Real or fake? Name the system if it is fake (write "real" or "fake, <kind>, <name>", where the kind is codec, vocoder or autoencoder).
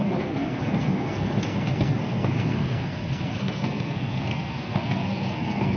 fake, codec, SNAC